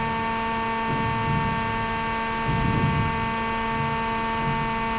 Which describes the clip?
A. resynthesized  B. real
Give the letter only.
B